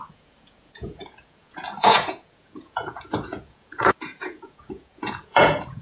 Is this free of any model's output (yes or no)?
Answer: no